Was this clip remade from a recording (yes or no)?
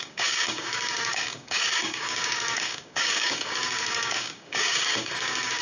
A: yes